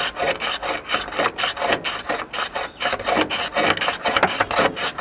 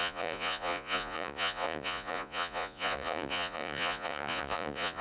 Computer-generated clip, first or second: second